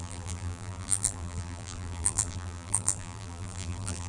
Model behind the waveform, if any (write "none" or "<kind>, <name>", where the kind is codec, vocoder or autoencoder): vocoder, BigVGAN v2